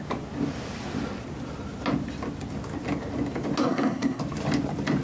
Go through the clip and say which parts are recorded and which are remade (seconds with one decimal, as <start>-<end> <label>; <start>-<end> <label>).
0.0-3.6 recorded; 3.6-4.2 remade; 4.2-5.0 recorded